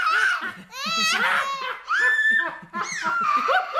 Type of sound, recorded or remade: recorded